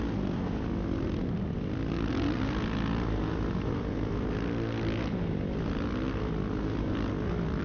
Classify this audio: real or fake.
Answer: real